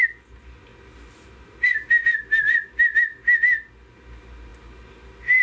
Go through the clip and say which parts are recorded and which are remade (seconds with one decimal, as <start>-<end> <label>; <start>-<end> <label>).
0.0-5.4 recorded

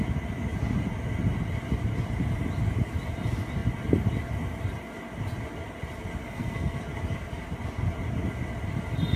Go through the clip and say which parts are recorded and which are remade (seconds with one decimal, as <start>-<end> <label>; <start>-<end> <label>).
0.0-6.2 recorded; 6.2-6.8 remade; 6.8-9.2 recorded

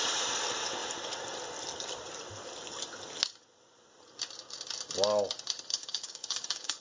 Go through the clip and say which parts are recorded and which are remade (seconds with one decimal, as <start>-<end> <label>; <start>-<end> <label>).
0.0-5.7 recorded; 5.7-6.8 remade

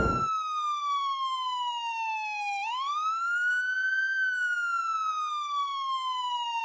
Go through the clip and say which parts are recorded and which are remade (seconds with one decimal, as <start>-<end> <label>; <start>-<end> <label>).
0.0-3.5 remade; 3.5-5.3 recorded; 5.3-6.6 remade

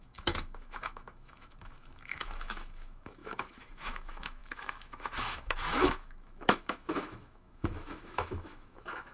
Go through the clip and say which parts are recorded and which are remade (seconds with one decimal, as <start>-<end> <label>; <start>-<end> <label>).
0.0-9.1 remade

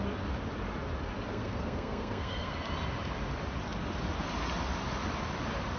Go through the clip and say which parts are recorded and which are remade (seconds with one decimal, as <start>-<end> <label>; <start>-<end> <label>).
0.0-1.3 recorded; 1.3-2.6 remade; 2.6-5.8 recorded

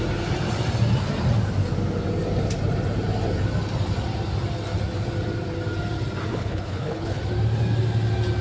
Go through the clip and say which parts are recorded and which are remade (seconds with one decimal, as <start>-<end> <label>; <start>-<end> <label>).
0.0-6.3 recorded; 6.3-7.2 remade; 7.2-8.4 recorded